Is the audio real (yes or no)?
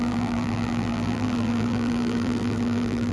no